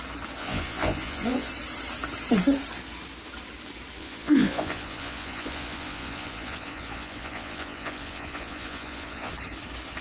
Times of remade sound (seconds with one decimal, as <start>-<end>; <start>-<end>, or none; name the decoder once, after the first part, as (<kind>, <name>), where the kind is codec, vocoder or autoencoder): 0.4-1.5 (vocoder, Vocos); 4.0-9.3

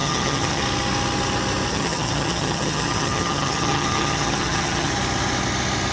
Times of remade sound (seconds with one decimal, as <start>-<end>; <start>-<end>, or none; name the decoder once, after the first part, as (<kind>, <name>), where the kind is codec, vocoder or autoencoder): 0.0-0.6 (vocoder, HiFi-GAN); 1.7-4.9

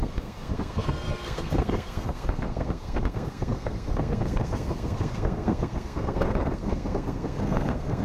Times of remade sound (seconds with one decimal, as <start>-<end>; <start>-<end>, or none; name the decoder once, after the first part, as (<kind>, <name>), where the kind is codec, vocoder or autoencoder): 0.0-8.0 (codec, SNAC)